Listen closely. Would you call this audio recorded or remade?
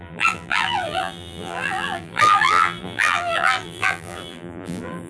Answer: remade